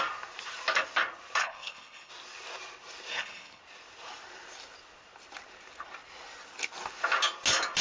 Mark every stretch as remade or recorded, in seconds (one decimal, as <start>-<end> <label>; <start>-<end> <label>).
0.0-1.4 recorded; 1.4-2.1 remade; 2.1-3.1 recorded; 3.1-3.6 remade; 3.6-7.8 recorded